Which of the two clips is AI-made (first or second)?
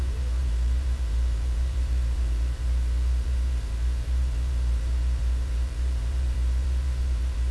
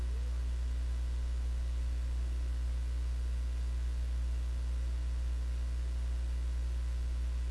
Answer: first